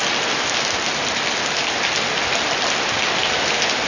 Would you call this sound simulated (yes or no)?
no